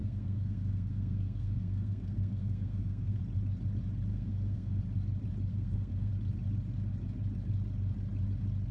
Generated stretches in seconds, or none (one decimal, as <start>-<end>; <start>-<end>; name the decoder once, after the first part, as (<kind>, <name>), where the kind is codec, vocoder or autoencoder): 0.0-3.2 (codec, SNAC); 4.1-4.8; 5.5-6.1